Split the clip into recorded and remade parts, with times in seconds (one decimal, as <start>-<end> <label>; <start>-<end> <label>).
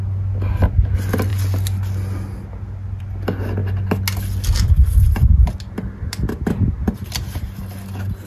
0.0-8.3 recorded